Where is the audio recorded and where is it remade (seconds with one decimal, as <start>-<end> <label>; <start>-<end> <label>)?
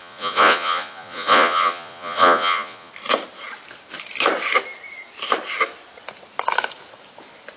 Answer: 0.0-2.9 remade; 2.9-7.6 recorded